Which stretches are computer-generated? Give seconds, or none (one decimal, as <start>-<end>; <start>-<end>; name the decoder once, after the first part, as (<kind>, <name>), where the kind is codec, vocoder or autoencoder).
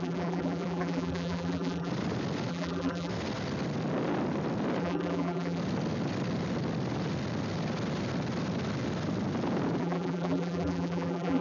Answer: 0.0-1.9 (vocoder, BigVGAN v2); 2.5-3.1; 4.8-5.6; 9.8-11.4